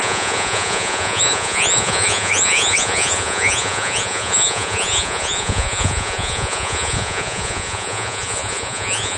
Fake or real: fake